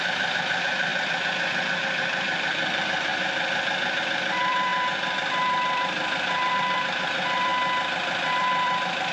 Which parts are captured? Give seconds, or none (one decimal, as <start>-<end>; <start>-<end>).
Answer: 3.1-4.0; 7.5-8.3